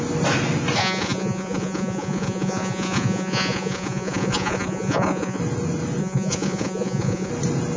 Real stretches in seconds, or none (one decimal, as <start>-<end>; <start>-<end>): 0.0-0.8; 5.4-6.0; 7.3-7.8